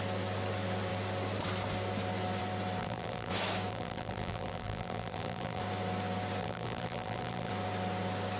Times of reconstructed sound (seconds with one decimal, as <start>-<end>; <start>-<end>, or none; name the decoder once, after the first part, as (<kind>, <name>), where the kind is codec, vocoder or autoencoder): 2.8-3.3 (vocoder, BigVGAN v2); 3.7-5.6; 6.4-7.5